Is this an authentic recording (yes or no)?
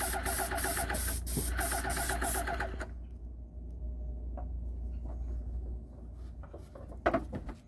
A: yes